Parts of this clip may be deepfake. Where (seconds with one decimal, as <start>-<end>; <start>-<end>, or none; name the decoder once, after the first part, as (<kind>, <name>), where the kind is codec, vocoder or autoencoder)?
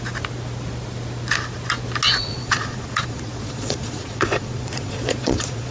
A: 2.2-5.7 (vocoder, Vocos)